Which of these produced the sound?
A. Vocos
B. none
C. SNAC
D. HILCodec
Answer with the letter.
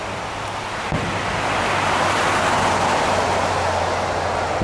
B